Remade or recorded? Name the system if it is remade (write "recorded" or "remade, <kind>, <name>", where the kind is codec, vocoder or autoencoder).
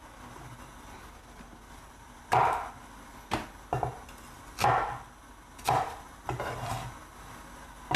recorded